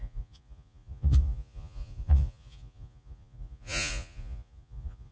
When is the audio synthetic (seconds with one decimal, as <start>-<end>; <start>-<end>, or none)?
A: 0.0-5.1